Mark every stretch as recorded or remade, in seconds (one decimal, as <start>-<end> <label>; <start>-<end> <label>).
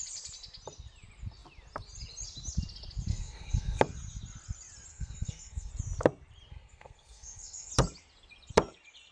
0.0-3.1 recorded; 3.1-3.8 remade; 3.8-4.9 recorded; 4.9-5.7 remade; 5.7-6.5 recorded; 6.5-7.7 remade; 7.7-9.1 recorded